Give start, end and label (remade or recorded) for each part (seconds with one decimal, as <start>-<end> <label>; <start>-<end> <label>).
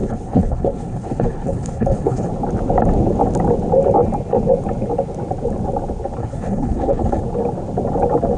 0.0-2.3 remade; 2.3-6.2 recorded; 6.2-7.2 remade; 7.2-8.4 recorded